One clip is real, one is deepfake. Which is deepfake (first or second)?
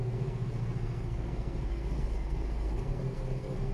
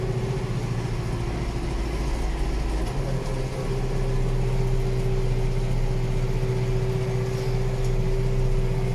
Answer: first